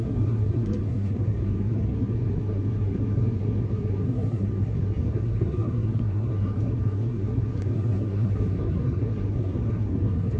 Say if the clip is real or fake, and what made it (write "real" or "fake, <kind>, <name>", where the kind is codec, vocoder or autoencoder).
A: fake, codec, SNAC